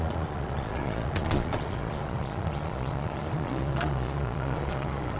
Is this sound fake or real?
fake